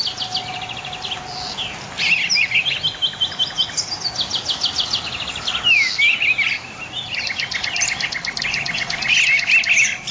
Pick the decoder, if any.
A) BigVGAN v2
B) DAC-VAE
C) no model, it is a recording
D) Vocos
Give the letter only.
C